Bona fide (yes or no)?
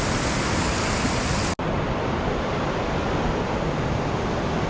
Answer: yes